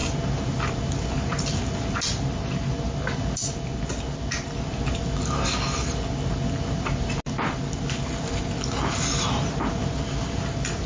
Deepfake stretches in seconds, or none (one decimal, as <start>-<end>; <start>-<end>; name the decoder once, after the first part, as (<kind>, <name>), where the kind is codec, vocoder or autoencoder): none